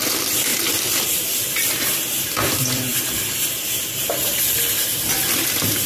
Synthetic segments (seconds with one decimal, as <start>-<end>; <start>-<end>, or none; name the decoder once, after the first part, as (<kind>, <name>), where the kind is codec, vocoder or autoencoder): 0.0-2.9 (vocoder, BigVGAN v2)